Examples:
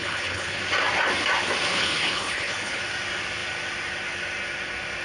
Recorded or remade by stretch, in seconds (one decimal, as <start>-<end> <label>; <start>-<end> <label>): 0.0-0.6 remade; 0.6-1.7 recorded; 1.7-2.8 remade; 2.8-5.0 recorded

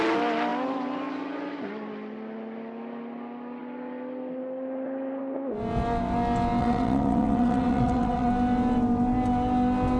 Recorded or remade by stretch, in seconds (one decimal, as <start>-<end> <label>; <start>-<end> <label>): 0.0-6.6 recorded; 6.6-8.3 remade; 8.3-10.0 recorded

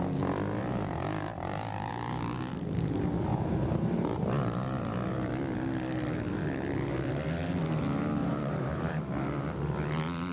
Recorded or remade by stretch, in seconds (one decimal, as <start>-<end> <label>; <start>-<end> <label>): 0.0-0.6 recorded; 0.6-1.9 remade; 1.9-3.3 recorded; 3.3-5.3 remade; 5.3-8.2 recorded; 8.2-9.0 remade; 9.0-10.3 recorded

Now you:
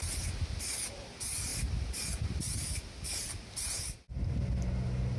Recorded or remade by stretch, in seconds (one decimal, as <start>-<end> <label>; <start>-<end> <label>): 0.0-1.5 recorded; 1.5-4.6 remade; 4.6-5.2 recorded

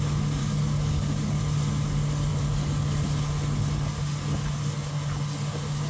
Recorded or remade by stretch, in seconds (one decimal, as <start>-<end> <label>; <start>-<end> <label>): 0.0-0.4 recorded; 0.4-1.4 remade; 1.4-5.9 recorded

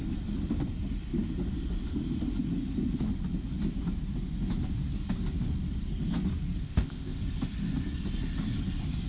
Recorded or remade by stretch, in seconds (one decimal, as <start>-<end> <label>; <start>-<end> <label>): 0.0-6.6 recorded; 6.6-7.2 remade; 7.2-9.1 recorded

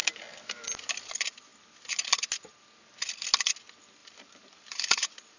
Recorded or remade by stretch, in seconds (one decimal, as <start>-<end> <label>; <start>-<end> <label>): 0.0-4.0 recorded; 4.0-5.4 remade

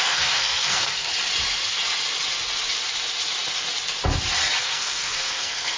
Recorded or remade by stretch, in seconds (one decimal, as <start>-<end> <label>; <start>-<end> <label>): 0.0-1.1 remade; 1.1-4.6 recorded; 4.6-5.8 remade